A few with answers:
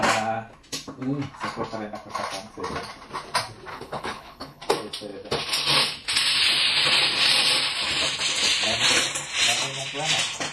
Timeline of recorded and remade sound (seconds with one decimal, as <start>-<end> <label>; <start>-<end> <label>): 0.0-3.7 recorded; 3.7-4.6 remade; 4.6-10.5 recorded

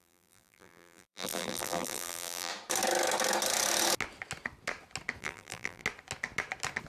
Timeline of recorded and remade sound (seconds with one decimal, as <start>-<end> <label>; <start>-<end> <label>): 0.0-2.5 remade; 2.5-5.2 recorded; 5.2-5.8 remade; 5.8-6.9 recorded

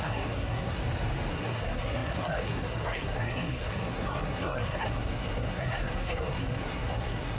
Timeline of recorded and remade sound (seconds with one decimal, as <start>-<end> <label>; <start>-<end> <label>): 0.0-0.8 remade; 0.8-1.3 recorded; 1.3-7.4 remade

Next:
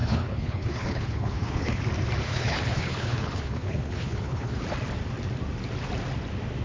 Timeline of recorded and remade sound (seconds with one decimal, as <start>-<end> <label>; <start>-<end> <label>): 0.0-1.8 remade; 1.8-2.2 recorded; 2.2-4.6 remade; 4.6-6.6 recorded

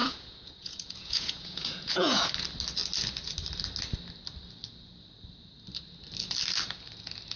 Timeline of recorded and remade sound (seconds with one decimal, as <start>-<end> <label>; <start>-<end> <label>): 0.0-2.3 remade; 2.3-7.4 recorded

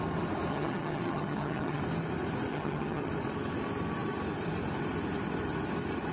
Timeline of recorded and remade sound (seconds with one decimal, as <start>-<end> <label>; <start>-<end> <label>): 0.0-0.5 recorded; 0.5-1.8 remade; 1.8-2.5 recorded; 2.5-3.1 remade; 3.1-6.1 recorded